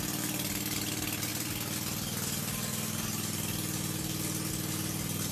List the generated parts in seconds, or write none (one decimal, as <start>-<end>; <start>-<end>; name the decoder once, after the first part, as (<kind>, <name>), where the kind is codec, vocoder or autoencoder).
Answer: none

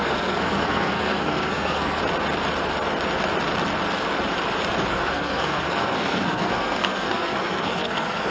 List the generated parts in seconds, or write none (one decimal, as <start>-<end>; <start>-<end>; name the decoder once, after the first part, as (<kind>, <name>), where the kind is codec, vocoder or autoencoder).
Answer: 0.0-2.0 (codec, SNAC); 4.9-8.3

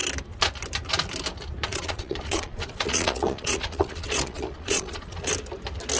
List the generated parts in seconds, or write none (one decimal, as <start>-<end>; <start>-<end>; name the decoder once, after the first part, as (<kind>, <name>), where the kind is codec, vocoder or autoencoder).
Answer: 1.7-5.3 (vocoder, Vocos)